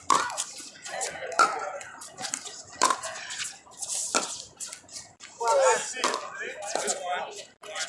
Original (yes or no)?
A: yes